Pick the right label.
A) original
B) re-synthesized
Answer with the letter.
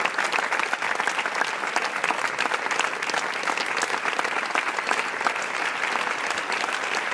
A